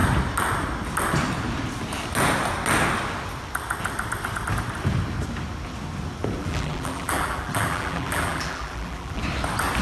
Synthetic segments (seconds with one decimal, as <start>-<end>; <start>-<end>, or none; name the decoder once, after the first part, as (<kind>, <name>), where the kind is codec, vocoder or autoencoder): 6.4-9.2 (vocoder, BigVGAN v2)